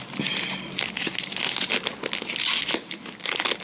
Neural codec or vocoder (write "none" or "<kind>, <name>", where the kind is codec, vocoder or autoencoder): none